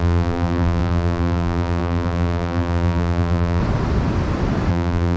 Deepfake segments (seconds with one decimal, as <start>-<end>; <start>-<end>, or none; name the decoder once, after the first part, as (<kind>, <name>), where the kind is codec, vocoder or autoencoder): 0.0-3.6 (vocoder, BigVGAN v2); 4.7-5.2

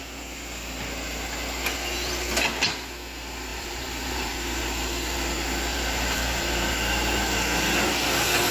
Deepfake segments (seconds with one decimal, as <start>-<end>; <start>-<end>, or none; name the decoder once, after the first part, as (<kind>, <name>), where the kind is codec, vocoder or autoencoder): 3.5-4.6 (vocoder, BigVGAN v2); 5.7-6.7